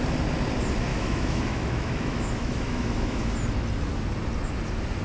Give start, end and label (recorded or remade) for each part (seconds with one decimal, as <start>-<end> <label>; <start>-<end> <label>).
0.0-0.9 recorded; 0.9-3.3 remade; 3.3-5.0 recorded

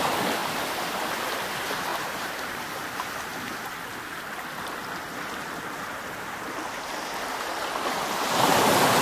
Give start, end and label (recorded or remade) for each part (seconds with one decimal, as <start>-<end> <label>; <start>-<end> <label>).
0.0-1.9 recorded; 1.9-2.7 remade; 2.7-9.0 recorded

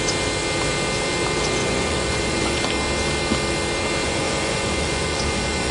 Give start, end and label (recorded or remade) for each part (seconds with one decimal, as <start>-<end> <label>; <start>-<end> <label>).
0.0-1.6 recorded; 1.6-2.6 remade; 2.6-4.0 recorded; 4.0-5.7 remade

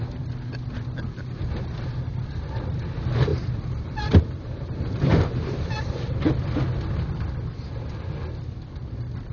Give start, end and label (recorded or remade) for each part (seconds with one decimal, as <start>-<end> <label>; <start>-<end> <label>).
0.0-3.3 recorded; 3.3-6.3 remade; 6.3-9.3 recorded

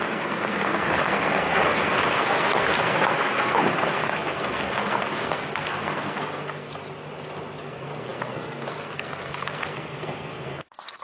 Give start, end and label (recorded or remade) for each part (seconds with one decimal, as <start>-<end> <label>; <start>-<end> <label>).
0.0-6.8 remade; 6.8-7.6 recorded; 7.6-11.0 remade

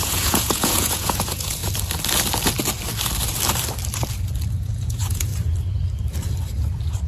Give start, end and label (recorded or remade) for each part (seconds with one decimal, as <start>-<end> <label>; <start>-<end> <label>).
0.0-1.6 remade; 1.6-4.6 recorded; 4.6-5.3 remade; 5.3-7.1 recorded

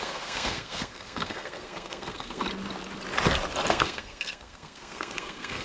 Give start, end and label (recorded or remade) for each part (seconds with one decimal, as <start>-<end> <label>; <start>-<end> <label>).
0.0-2.4 remade; 2.4-3.7 recorded; 3.7-5.6 remade

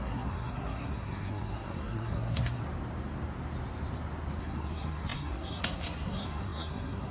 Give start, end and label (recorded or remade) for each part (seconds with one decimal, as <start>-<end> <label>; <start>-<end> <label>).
0.0-2.6 remade; 2.6-4.4 recorded; 4.4-7.1 remade